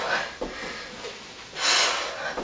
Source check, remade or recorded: recorded